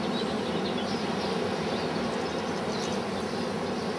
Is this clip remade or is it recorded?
recorded